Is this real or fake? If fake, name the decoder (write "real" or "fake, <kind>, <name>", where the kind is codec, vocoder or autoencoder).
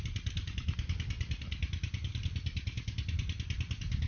real